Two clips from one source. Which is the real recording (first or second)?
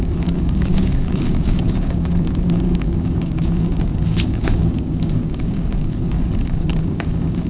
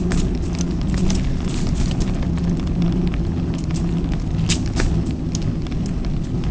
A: second